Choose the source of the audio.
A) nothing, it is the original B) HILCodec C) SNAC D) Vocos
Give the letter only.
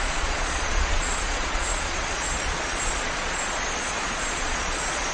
D